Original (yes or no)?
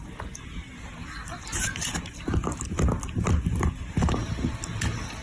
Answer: yes